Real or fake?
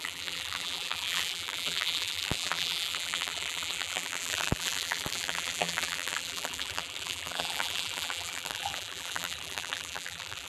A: fake